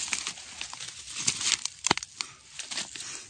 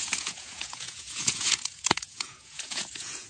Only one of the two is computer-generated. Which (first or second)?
second